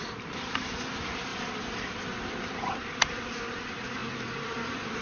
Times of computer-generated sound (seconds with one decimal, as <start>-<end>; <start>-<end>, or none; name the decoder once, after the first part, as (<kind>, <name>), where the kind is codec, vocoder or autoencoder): 1.3-2.4 (vocoder, BigVGAN v2); 4.0-5.0